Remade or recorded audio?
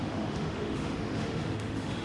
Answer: remade